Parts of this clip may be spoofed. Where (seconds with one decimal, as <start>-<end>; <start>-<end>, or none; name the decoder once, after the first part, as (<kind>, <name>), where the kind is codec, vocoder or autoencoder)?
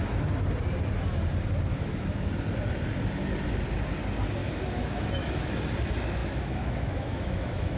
1.7-2.3 (autoencoder, DAC-VAE); 4.4-5.5; 6.2-7.8